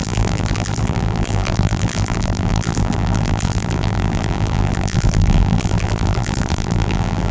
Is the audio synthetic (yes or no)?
yes